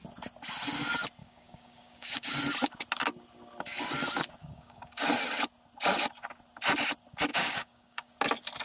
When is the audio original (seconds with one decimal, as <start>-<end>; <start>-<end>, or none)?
0.0-1.2; 2.4-4.4; 5.1-7.3; 8.1-8.6